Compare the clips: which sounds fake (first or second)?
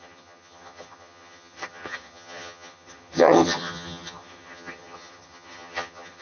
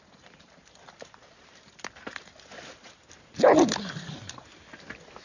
first